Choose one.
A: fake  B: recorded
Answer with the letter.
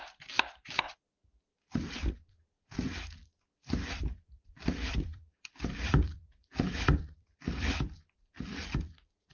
A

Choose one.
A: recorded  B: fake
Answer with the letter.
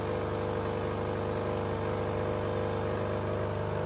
A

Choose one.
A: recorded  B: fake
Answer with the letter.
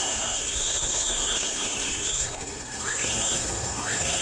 B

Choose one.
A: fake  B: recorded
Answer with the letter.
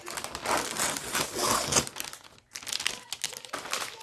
B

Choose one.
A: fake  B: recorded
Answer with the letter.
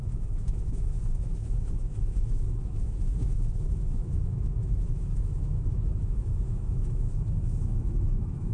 A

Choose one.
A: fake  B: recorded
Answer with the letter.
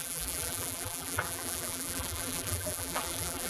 A